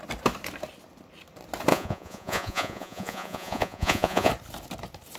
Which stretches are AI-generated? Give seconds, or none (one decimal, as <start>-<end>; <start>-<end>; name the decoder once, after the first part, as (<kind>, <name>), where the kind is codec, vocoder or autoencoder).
1.7-4.3 (vocoder, Vocos)